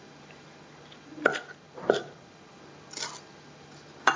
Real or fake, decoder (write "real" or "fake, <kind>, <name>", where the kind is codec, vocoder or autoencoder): real